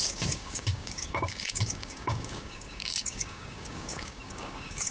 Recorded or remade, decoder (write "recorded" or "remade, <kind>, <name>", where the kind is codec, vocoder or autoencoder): remade, codec, DAC